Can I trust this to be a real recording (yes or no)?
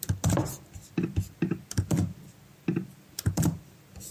yes